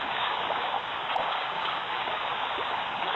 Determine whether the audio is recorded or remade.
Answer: remade